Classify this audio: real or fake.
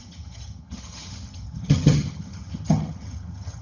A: fake